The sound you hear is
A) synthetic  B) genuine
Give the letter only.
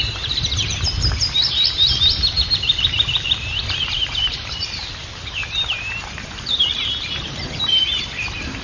A